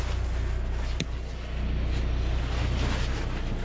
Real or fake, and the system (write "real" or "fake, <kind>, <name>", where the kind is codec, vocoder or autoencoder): real